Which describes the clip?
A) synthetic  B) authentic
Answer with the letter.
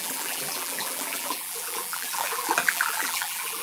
A